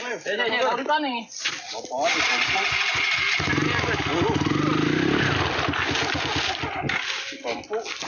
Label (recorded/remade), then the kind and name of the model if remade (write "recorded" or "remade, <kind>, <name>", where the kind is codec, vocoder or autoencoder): recorded